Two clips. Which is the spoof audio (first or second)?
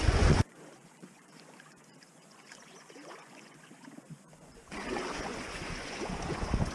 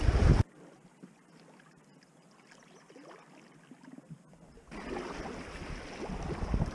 first